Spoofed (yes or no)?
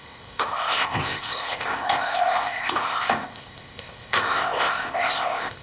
yes